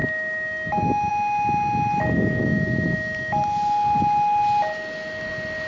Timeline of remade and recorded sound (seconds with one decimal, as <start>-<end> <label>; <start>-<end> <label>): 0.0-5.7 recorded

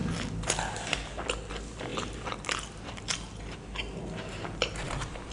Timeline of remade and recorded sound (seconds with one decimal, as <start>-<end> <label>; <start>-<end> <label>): 0.0-5.3 recorded

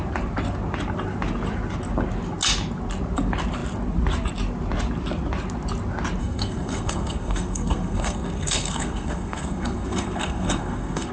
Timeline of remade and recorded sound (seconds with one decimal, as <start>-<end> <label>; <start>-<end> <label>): 0.0-6.2 recorded; 6.2-11.1 remade

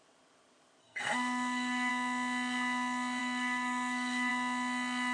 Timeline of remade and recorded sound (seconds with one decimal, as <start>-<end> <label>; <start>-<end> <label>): 0.0-0.8 recorded; 0.8-1.9 remade; 1.9-3.2 recorded; 3.2-4.3 remade; 4.3-5.1 recorded

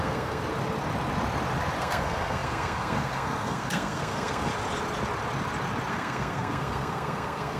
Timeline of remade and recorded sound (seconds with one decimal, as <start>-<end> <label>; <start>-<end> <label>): 0.0-0.4 remade; 0.4-1.8 recorded; 1.8-4.5 remade; 4.5-5.9 recorded; 5.9-7.6 remade

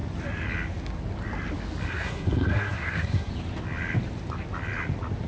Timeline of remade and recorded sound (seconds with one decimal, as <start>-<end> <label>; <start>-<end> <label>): 0.0-1.9 recorded; 1.9-3.3 remade; 3.3-5.3 recorded

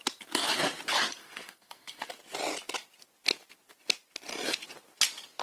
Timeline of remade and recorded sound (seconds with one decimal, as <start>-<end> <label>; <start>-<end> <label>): 0.0-1.2 recorded; 1.2-2.1 remade; 2.1-5.4 recorded